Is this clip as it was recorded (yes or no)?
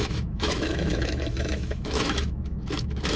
no